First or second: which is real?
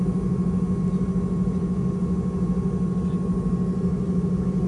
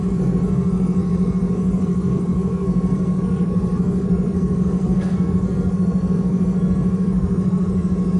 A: first